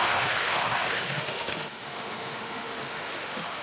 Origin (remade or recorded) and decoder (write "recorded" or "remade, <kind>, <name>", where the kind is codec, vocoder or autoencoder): remade, autoencoder, DAC-VAE